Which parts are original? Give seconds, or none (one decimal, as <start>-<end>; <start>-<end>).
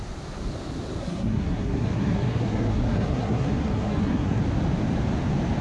0.0-1.0; 4.4-5.6